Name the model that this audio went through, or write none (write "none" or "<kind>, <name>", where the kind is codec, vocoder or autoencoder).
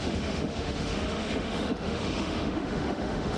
autoencoder, DAC-VAE